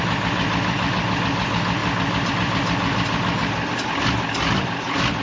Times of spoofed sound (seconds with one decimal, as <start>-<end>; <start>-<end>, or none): none